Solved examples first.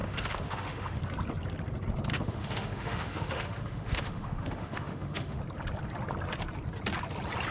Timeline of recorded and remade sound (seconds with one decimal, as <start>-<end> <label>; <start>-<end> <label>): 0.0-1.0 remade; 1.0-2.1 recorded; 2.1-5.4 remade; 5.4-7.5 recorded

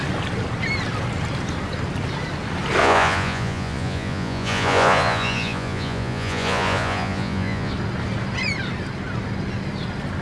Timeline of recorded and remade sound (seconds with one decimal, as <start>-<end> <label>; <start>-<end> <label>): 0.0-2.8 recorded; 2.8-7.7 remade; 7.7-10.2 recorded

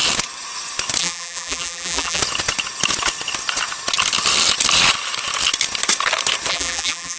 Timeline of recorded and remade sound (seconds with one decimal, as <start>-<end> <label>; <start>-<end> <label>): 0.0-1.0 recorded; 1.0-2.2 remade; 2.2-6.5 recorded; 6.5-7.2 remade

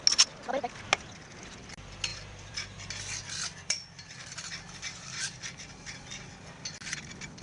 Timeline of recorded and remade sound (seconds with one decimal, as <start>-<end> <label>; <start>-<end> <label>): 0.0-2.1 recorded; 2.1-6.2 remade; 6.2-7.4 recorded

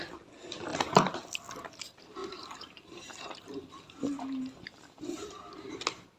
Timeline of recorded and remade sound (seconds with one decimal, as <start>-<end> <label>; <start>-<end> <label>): 0.0-2.2 recorded; 2.2-6.2 remade

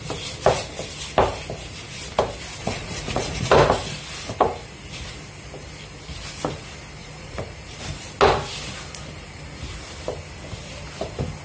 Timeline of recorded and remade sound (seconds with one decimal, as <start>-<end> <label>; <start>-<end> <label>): 0.0-2.6 recorded; 2.6-3.5 remade; 3.5-7.0 recorded; 7.0-7.8 remade; 7.8-11.4 recorded

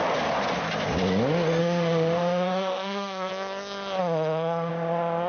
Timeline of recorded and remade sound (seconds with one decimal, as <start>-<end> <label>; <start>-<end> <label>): 0.0-1.6 recorded; 1.6-3.3 remade; 3.3-4.0 recorded; 4.0-4.7 remade; 4.7-5.3 recorded

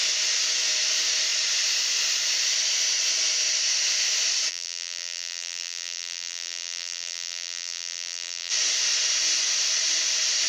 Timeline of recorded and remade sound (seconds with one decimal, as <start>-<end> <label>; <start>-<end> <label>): 0.0-4.5 recorded; 4.5-8.5 remade; 8.5-10.5 recorded